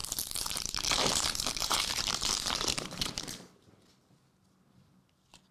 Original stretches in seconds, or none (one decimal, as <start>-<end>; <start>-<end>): 3.3-5.5